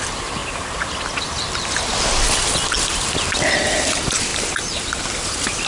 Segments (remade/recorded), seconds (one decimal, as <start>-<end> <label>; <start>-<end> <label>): 0.0-4.3 recorded; 4.3-5.3 remade; 5.3-5.7 recorded